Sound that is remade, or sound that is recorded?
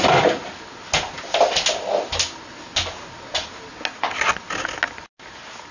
recorded